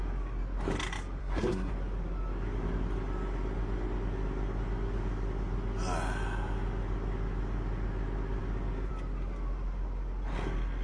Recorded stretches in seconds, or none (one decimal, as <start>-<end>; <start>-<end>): 0.0-1.2; 1.7-10.8